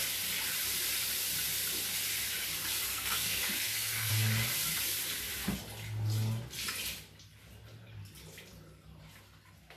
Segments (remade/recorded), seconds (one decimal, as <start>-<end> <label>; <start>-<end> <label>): 0.0-2.9 recorded; 2.9-4.1 remade; 4.1-9.8 recorded